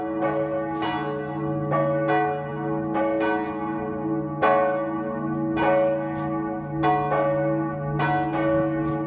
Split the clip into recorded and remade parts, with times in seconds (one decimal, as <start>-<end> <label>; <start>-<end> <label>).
0.0-9.1 recorded